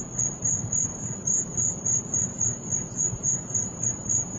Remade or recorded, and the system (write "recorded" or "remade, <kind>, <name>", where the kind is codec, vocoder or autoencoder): remade, vocoder, BigVGAN v2